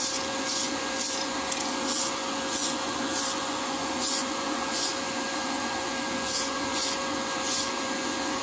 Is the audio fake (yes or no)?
yes